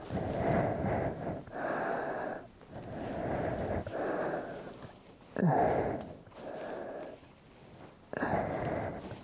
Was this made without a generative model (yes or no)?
yes